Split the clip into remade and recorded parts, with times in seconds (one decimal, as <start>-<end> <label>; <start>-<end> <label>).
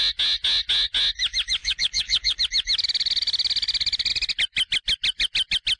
0.0-1.6 recorded; 1.6-2.4 remade; 2.4-5.8 recorded